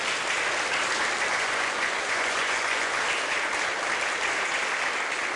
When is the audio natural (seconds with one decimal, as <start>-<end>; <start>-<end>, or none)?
0.0-1.3; 3.0-5.4